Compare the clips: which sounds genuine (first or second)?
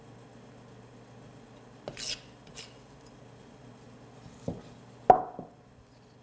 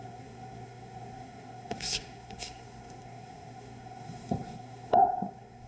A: first